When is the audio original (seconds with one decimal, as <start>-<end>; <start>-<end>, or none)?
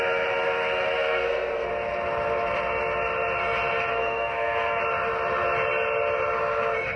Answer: 0.0-1.0; 1.7-3.9; 4.8-7.0